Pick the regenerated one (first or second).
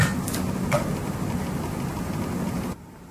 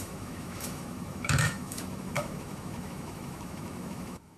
second